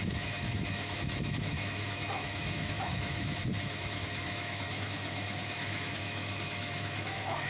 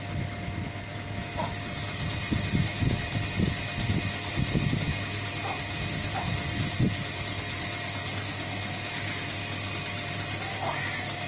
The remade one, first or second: first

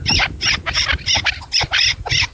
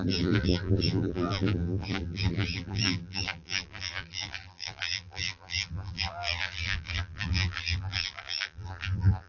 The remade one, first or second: second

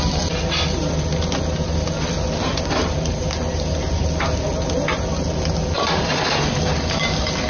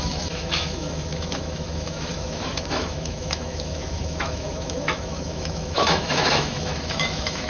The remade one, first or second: second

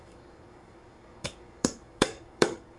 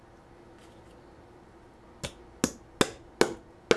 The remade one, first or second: first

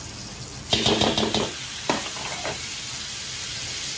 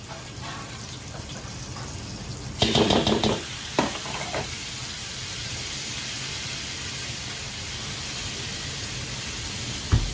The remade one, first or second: second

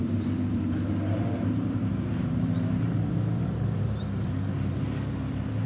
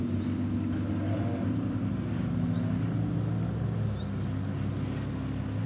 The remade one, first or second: first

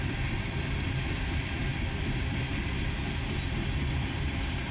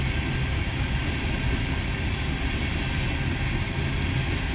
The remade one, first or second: first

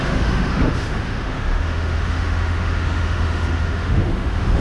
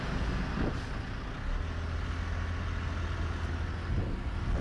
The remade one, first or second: first